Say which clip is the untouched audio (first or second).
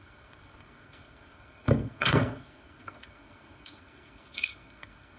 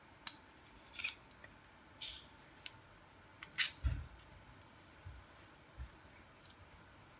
second